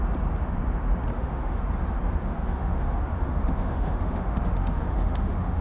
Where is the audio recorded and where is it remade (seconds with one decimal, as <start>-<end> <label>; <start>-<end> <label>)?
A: 0.0-1.1 recorded; 1.1-1.6 remade; 1.6-2.2 recorded; 2.2-5.6 remade